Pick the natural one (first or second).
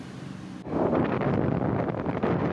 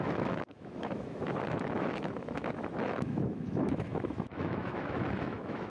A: first